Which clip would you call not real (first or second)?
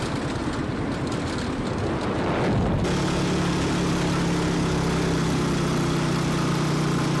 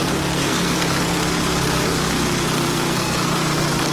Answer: second